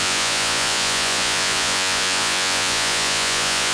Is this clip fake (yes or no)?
yes